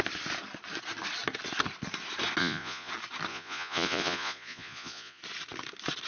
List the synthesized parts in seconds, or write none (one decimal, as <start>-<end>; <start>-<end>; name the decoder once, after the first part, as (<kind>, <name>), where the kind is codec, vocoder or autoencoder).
2.4-2.9 (vocoder, Vocos); 3.3-5.2